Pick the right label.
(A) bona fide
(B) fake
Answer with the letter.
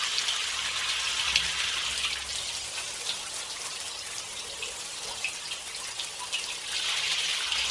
A